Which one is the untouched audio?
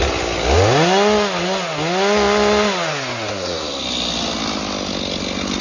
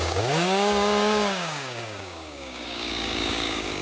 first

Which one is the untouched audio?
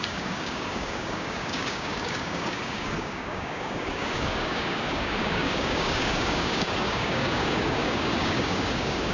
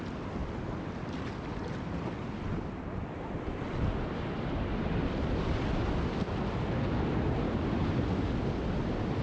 second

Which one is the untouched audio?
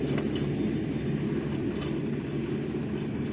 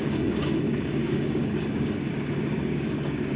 first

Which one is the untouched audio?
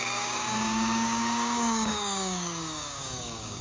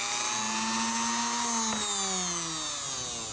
second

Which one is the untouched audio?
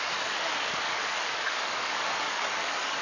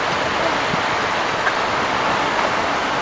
second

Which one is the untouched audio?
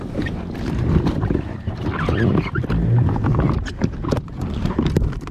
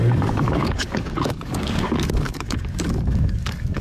first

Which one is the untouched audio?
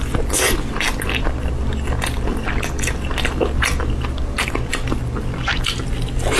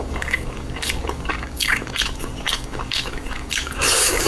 first